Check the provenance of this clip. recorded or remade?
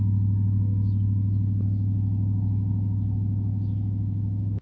remade